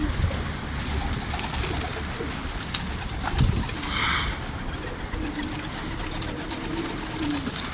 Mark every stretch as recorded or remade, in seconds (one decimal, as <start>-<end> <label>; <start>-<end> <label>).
0.0-7.7 remade